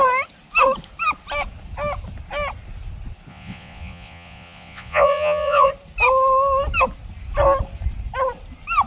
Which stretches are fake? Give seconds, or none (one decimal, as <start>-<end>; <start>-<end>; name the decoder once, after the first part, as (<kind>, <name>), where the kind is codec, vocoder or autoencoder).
3.3-5.7 (vocoder, Vocos)